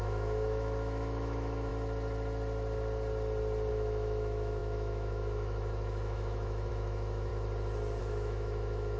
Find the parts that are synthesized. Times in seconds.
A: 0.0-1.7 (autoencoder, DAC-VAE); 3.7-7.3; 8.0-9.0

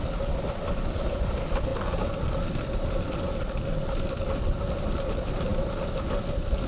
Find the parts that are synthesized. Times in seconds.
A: none